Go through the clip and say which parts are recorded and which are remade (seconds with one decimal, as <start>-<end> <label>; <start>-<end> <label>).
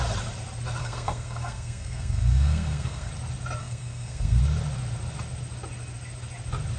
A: 0.0-0.8 recorded; 0.8-3.1 remade; 3.1-3.6 recorded; 3.6-4.4 remade; 4.4-6.8 recorded